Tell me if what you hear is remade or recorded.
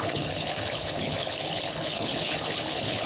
remade